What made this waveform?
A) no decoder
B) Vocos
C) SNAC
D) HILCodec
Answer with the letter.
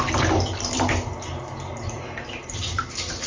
A